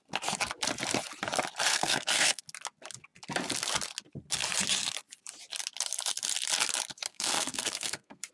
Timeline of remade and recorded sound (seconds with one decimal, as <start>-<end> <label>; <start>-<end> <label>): 0.0-1.7 recorded; 1.7-2.4 remade; 2.4-7.1 recorded; 7.1-8.3 remade